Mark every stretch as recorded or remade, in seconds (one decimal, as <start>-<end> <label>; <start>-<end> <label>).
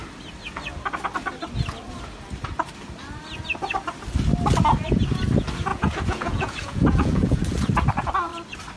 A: 0.0-5.7 recorded; 5.7-7.4 remade; 7.4-8.8 recorded